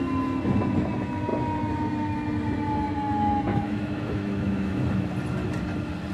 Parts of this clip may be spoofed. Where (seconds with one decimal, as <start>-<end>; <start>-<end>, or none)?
3.5-5.1